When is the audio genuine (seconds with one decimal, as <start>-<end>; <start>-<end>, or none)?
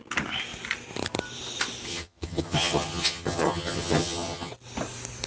0.0-1.9; 4.5-5.3